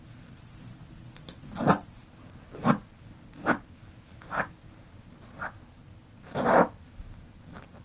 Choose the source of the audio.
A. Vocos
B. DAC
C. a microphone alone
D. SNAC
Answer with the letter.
C